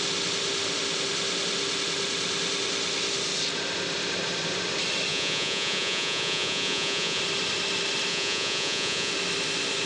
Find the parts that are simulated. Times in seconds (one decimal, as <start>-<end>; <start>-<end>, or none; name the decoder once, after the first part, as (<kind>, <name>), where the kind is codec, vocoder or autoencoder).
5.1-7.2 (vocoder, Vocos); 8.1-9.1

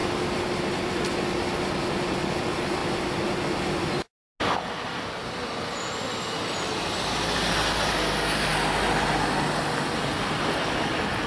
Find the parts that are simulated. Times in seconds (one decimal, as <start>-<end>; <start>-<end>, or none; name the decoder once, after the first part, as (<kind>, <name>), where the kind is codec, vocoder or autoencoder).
none

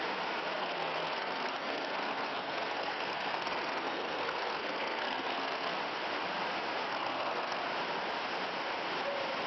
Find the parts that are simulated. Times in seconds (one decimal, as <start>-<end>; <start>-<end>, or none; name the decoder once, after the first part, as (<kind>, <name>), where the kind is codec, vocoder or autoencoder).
0.6-5.7 (codec, SNAC); 6.9-7.6

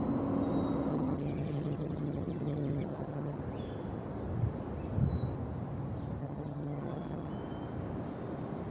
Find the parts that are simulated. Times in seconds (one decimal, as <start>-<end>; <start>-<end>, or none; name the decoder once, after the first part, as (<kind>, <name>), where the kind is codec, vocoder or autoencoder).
0.9-3.4 (vocoder, HiFi-GAN); 6.2-7.3

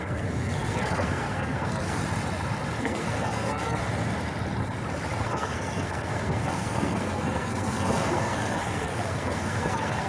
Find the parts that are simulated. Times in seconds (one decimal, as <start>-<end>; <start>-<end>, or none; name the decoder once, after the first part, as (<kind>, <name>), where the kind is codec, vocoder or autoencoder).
0.0-2.0 (codec, SNAC); 2.8-3.8; 5.2-10.1

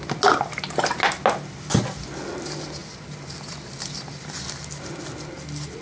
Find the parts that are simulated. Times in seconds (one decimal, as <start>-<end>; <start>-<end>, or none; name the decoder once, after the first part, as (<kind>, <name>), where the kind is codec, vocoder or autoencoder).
2.8-5.0 (vocoder, BigVGAN v2)